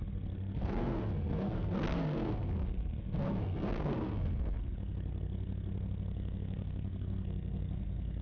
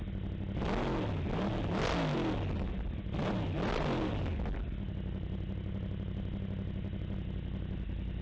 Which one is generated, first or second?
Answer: first